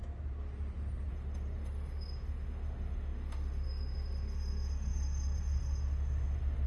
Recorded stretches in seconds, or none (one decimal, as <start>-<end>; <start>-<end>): 0.0-1.1